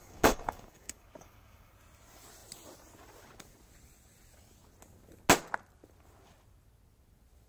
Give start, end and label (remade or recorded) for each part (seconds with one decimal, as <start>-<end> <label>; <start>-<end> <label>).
0.0-1.7 remade; 1.7-7.5 recorded